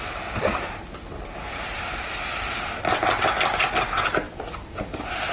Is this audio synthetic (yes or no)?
no